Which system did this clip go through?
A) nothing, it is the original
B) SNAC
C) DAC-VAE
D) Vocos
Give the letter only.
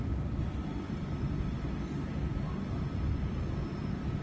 A